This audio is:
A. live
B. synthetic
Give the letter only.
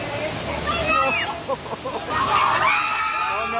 A